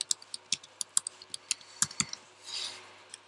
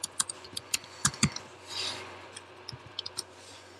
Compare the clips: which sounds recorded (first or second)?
first